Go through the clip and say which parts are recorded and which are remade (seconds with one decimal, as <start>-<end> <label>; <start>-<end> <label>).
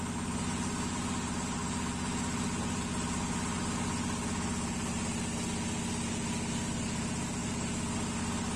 0.0-8.6 recorded